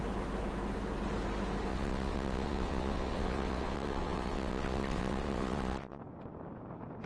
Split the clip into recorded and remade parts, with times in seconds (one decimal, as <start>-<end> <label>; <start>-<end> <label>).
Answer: 0.0-1.7 recorded; 1.7-6.0 remade; 6.0-7.1 recorded